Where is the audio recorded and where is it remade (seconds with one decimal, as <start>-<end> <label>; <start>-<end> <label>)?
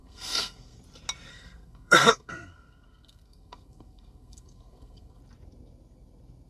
0.0-0.8 remade; 0.8-1.3 recorded; 1.3-5.2 remade; 5.2-6.5 recorded